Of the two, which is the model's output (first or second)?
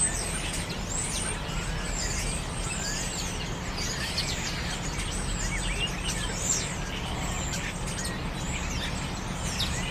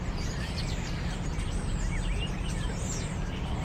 second